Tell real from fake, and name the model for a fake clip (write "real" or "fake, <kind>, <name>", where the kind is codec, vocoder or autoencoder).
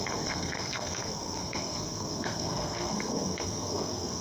fake, codec, SNAC